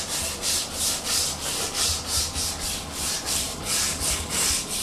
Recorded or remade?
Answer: remade